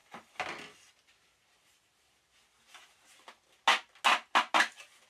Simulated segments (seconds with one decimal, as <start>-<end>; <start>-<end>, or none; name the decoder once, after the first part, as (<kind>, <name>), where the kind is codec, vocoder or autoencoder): none